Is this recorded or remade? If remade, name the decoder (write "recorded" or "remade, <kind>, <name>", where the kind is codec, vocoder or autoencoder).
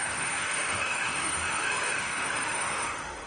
remade, autoencoder, DAC-VAE